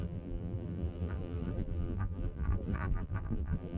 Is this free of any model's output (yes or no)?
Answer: no